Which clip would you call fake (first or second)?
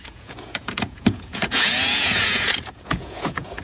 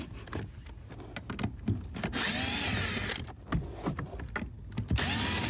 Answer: first